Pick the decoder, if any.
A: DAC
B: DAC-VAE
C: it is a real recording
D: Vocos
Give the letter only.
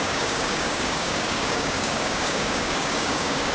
A